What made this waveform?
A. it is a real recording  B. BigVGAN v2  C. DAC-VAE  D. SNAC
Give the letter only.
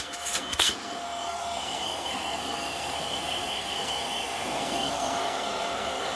D